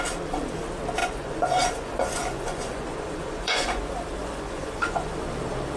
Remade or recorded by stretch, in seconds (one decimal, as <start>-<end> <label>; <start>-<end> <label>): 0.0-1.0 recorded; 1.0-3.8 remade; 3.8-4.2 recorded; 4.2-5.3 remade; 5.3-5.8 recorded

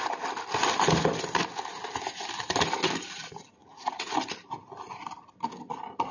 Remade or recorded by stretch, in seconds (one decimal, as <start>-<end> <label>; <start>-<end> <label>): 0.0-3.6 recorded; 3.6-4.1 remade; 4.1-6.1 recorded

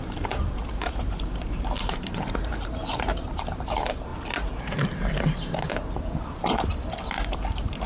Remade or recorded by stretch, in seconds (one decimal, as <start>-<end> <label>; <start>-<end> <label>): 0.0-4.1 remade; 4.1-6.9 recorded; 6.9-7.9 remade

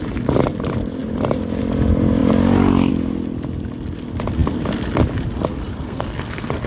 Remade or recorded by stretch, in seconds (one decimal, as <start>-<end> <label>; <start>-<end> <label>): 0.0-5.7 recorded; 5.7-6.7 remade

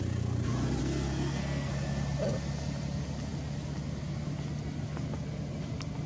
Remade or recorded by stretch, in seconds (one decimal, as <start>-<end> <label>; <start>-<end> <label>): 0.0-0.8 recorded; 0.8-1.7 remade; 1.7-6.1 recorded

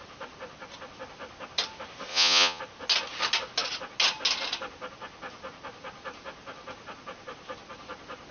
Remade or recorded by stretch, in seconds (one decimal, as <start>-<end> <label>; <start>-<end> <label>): 0.0-2.1 recorded; 2.1-2.6 remade; 2.6-8.3 recorded